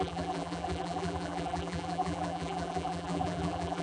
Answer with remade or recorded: remade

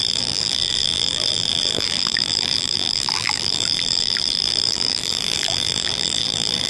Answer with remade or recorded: remade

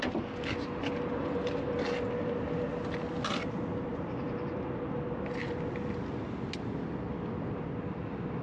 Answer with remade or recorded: recorded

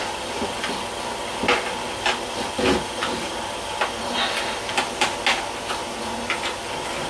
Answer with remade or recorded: recorded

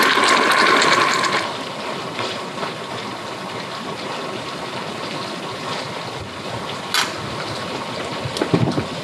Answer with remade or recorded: recorded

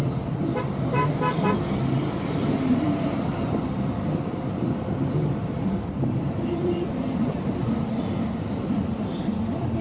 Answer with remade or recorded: remade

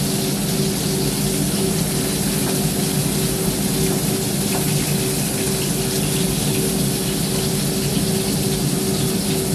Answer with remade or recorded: recorded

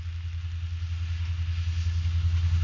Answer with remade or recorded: recorded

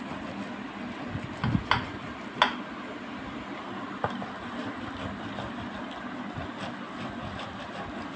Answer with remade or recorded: recorded